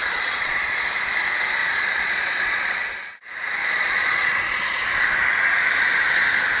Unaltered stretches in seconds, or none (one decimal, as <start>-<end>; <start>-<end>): 0.8-1.6; 2.8-3.6; 4.8-6.6